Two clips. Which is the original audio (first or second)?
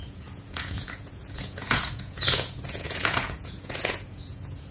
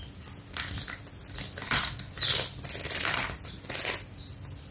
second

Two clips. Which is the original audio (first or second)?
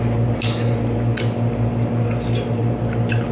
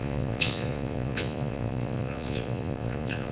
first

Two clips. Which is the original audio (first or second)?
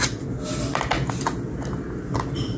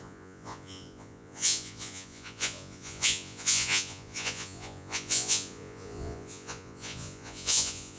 first